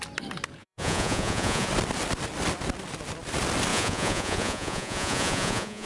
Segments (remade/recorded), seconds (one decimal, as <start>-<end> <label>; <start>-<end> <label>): 0.0-0.6 recorded; 0.6-1.7 remade; 1.7-3.7 recorded; 3.7-5.9 remade